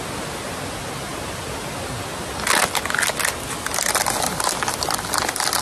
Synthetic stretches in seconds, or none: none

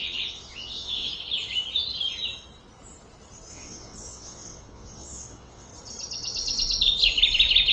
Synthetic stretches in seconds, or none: 0.0-1.1 (vocoder, WaveNeXt); 3.5-5.7

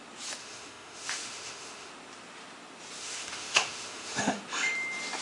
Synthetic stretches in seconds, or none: 0.4-1.9 (autoencoder, DAC-VAE); 3.0-4.4

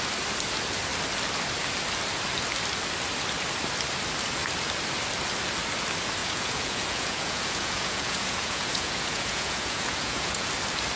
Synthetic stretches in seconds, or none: 6.2-10.5 (vocoder, Vocos)

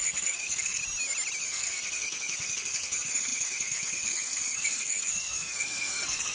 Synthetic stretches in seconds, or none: 0.0-0.8 (codec, SNAC); 1.4-6.3

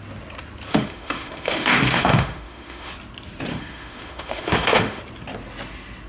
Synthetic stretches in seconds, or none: 0.7-2.9 (autoencoder, DAC-VAE); 3.5-5.0

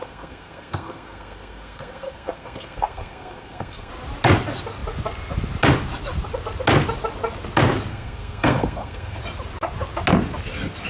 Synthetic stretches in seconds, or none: 0.0-3.9 (codec, SNAC); 7.9-9.2